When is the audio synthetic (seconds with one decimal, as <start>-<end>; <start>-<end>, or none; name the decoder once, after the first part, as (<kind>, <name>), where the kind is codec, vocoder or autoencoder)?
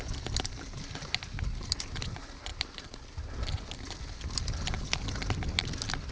none